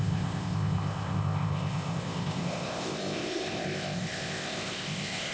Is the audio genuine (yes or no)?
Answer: no